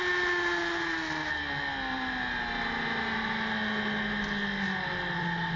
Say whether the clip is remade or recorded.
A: recorded